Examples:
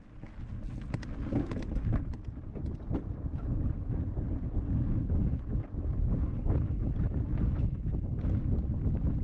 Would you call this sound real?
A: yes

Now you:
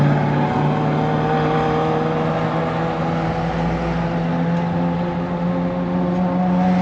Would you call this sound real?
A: yes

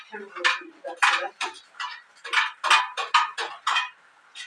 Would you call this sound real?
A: yes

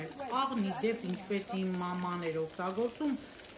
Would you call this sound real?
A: yes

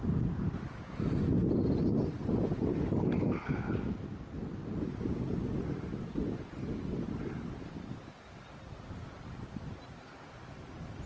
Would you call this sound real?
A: yes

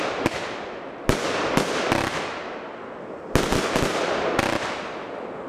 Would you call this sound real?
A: yes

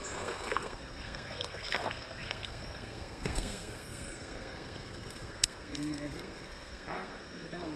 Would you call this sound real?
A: no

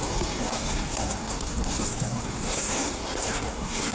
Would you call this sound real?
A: no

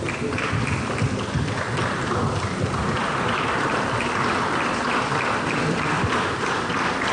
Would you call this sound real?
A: no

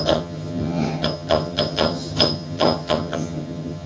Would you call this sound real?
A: no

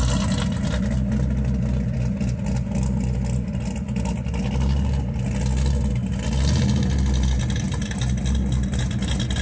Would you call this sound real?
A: yes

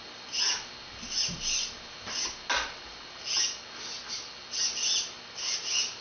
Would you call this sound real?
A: yes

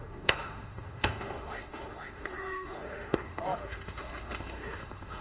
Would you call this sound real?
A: no